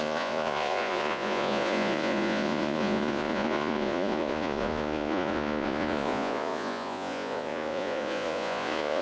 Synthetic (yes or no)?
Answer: yes